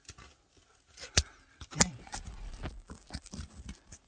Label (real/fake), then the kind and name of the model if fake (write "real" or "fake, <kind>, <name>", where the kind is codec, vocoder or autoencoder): real